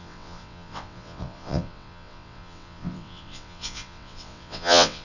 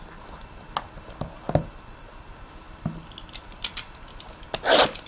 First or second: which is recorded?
second